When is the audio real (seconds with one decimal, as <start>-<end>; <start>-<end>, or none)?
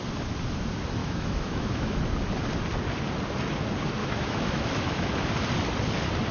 0.0-1.0; 2.0-4.0; 5.1-6.3